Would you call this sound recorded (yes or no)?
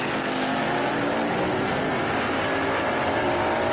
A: yes